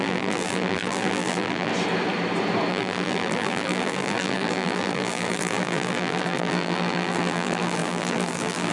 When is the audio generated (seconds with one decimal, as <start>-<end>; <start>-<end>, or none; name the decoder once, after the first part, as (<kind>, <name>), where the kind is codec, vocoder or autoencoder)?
0.0-1.7 (vocoder, BigVGAN v2); 2.7-8.7